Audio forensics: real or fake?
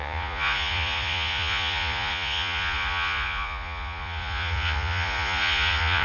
fake